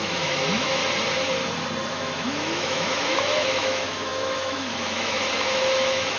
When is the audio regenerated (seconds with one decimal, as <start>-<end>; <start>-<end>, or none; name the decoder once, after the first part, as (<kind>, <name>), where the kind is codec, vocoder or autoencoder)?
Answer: 0.0-0.8 (autoencoder, DAC-VAE); 1.9-6.2